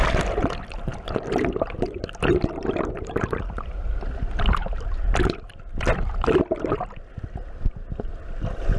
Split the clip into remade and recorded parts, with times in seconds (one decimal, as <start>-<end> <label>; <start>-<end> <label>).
0.0-8.8 recorded